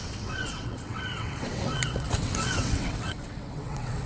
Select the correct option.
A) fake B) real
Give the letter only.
A